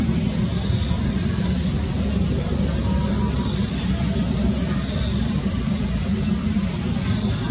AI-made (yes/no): no